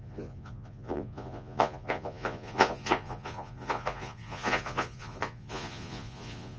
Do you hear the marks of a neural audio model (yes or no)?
yes